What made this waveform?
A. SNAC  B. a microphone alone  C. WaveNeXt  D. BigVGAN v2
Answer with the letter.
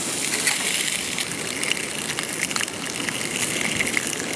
B